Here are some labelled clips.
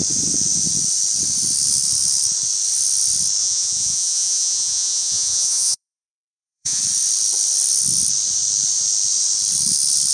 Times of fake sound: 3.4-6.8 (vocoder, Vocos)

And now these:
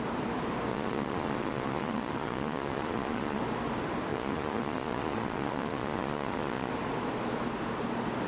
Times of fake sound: 0.7-3.4 (vocoder, Vocos); 4.1-6.7

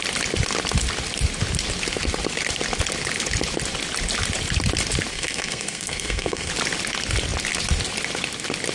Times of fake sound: 5.1-6.5 (codec, SNAC)

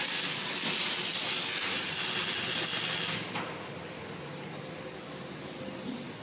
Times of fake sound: none

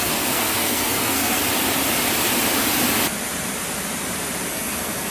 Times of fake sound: 0.0-1.4 (codec, SNAC); 4.5-5.1